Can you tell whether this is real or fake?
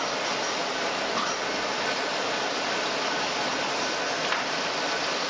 real